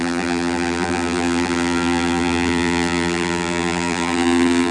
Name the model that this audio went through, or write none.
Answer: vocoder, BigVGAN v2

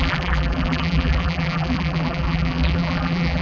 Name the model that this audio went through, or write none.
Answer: vocoder, BigVGAN v2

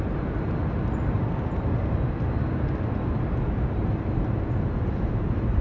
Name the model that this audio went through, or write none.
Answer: none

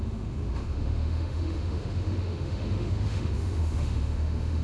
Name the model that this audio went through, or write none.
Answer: autoencoder, DAC-VAE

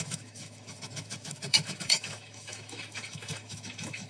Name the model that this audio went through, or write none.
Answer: autoencoder, DAC-VAE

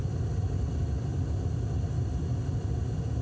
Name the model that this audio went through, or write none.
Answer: none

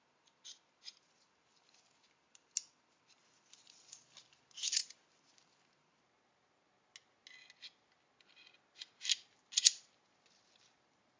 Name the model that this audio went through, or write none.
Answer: none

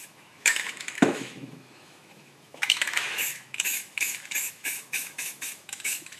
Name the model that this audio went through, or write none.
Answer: autoencoder, DAC-VAE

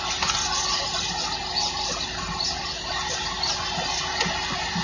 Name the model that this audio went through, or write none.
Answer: none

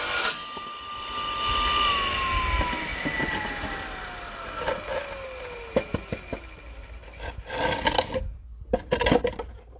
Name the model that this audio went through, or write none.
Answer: none